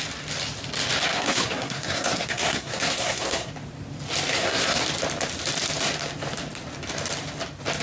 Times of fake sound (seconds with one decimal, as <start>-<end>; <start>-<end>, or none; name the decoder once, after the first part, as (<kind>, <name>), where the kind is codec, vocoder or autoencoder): 1.1-3.5 (codec, SNAC); 4.3-4.8